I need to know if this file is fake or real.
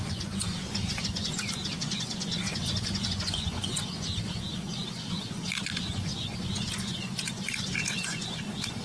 fake